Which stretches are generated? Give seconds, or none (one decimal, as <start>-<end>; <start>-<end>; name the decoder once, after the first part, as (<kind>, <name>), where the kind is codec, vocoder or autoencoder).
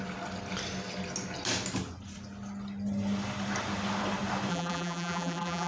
4.5-5.7 (vocoder, BigVGAN v2)